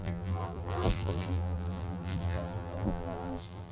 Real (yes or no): no